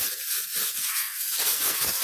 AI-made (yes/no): yes